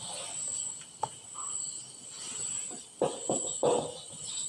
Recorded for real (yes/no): yes